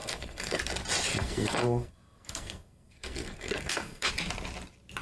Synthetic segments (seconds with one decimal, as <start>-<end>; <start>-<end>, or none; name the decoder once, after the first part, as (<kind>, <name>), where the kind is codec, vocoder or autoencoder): 0.0-0.6 (codec, SNAC); 1.1-4.1